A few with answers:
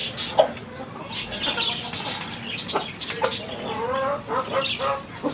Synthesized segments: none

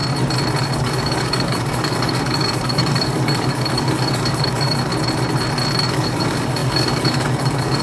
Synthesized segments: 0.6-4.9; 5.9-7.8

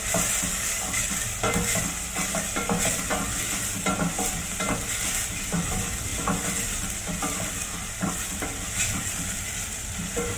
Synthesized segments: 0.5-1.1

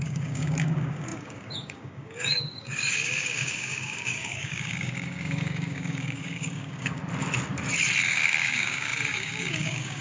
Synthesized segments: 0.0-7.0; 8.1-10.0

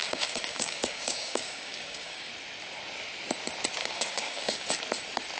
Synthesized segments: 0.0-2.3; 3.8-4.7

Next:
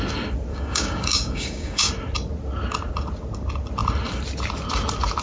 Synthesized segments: 0.5-1.9

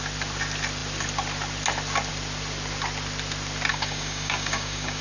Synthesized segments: 3.7-5.0

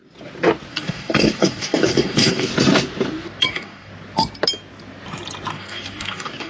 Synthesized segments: 0.7-2.5; 3.5-3.9; 5.5-6.5